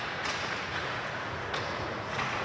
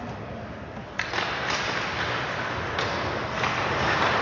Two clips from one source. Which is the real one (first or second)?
second